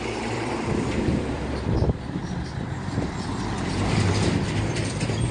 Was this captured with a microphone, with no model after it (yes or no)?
no